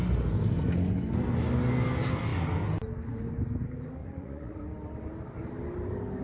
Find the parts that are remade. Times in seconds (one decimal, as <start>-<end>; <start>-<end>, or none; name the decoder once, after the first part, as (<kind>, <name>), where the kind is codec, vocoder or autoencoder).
4.0-4.6 (vocoder, Vocos)